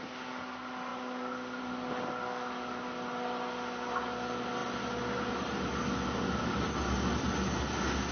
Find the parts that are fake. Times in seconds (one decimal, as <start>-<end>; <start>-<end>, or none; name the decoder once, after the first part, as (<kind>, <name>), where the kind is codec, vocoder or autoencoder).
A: none